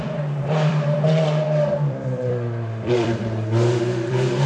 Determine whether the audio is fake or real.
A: fake